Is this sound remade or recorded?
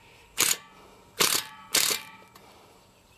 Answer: remade